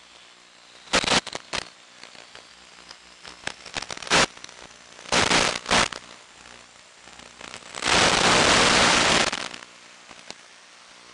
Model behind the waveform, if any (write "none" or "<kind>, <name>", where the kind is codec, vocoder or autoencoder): none